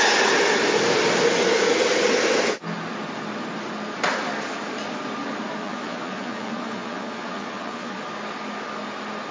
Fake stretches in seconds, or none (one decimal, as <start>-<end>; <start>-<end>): 5.6-8.0